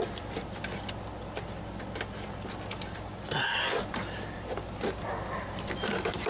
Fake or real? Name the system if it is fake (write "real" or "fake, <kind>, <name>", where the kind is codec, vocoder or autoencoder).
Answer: real